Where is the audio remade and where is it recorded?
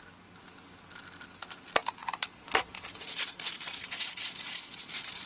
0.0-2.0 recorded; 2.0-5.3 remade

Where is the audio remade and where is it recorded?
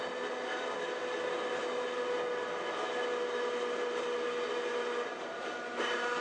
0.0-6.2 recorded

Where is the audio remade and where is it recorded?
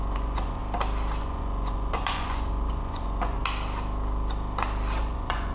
0.0-0.6 remade; 0.6-1.2 recorded; 1.2-3.4 remade; 3.4-5.0 recorded; 5.0-5.5 remade